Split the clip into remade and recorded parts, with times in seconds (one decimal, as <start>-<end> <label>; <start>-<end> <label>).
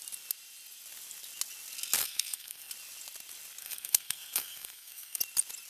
0.0-2.0 recorded; 2.0-2.7 remade; 2.7-3.6 recorded; 3.6-5.2 remade; 5.2-5.7 recorded